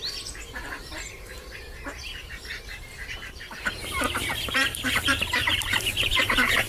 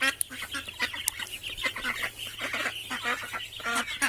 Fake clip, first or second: first